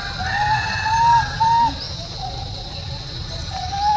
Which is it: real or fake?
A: real